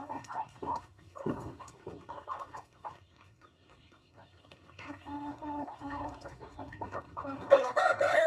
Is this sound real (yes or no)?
no